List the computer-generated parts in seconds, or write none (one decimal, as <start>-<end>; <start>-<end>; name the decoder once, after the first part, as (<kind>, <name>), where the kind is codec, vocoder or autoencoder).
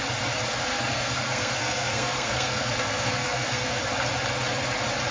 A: 0.7-3.8 (codec, SNAC)